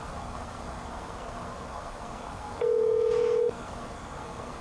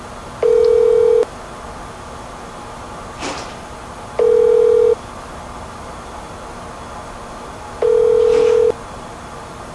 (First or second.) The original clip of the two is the second